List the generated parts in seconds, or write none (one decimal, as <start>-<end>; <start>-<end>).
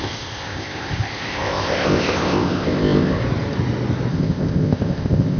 0.0-3.2; 4.1-5.4